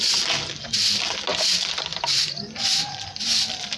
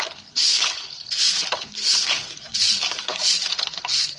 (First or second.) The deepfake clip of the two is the second